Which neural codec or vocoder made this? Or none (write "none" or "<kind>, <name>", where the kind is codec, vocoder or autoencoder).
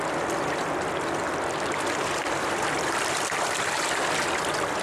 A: vocoder, BigVGAN v2